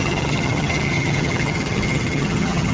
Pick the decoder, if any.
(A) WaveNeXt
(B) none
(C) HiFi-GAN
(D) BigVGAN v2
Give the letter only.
C